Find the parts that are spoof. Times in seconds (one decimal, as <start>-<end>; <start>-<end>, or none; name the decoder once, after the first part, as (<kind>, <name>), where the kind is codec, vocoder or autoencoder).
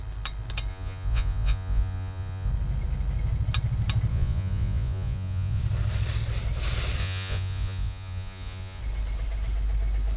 0.7-2.5 (vocoder, Vocos); 4.1-5.6; 7.0-8.8